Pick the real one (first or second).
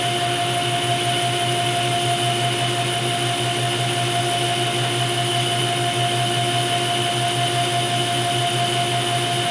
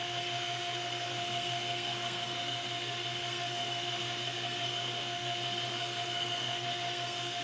first